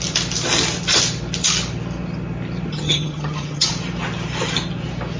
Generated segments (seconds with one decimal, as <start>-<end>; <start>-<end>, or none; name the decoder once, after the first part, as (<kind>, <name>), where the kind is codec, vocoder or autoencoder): 2.7-3.7 (vocoder, HiFi-GAN)

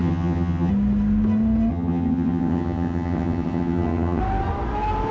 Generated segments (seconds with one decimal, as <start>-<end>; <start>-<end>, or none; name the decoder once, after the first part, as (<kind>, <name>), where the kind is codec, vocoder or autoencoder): 0.0-0.7 (vocoder, HiFi-GAN); 1.7-4.2

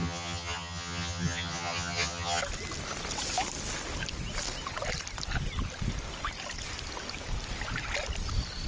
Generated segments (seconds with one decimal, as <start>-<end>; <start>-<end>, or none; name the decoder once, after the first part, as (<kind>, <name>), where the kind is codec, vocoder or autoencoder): 0.0-2.4 (vocoder, HiFi-GAN)

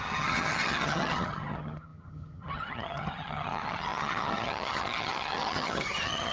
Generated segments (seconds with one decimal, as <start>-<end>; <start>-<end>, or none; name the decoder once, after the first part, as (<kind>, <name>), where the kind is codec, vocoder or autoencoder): 0.0-6.3 (vocoder, HiFi-GAN)